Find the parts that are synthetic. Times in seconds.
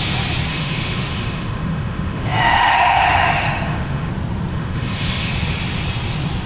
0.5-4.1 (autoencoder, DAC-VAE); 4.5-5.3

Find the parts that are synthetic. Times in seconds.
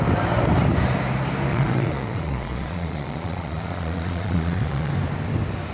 1.5-4.9 (vocoder, Vocos)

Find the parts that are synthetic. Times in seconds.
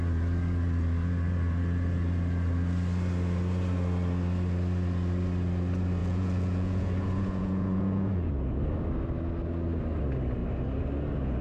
6.0-8.3 (vocoder, Vocos)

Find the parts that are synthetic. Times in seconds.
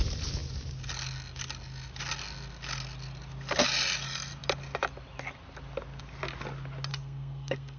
6.9-7.8 (codec, SNAC)